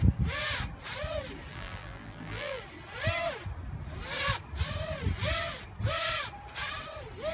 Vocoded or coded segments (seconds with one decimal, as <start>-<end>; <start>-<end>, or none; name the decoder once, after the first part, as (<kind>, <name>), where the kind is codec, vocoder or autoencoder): 1.5-2.6 (vocoder, BigVGAN v2)

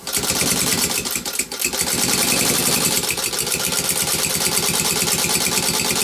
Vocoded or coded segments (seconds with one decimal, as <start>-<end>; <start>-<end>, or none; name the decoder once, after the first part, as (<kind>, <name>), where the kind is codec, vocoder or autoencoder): 0.7-4.3 (vocoder, BigVGAN v2)

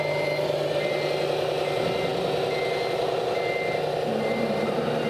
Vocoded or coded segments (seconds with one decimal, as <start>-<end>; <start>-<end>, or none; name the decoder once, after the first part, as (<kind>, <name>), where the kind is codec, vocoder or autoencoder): none